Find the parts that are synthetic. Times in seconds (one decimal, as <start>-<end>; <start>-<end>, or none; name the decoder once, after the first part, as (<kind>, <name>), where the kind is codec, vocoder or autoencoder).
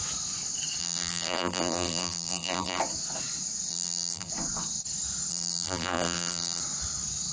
0.8-2.8 (vocoder, BigVGAN v2); 3.7-4.3; 5.3-6.6